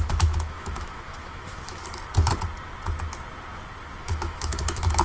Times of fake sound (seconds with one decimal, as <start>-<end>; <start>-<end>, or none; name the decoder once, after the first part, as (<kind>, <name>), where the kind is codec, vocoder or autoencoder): 0.0-1.8 (autoencoder, DAC-VAE); 4.0-5.0